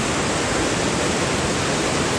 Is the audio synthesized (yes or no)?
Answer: no